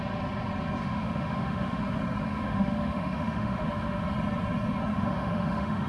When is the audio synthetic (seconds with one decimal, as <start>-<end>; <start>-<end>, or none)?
0.8-1.8; 2.3-4.0; 4.9-5.9